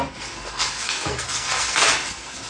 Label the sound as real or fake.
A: fake